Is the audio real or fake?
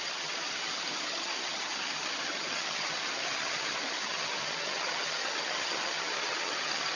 fake